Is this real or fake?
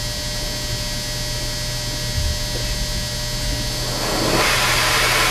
real